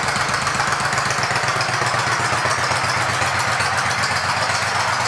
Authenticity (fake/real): real